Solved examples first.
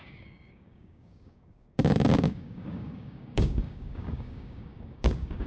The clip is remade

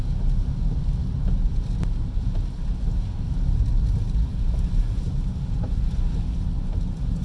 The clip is recorded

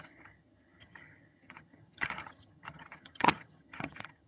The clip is remade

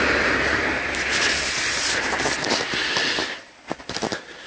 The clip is recorded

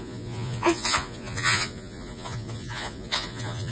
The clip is remade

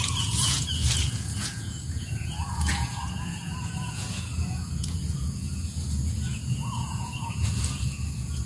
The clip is remade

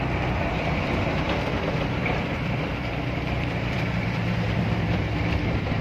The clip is remade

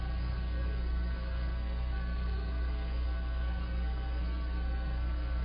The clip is remade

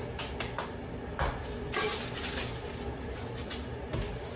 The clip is recorded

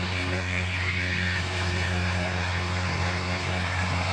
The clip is remade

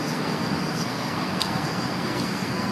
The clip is remade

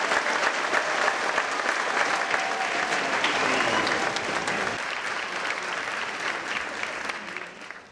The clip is recorded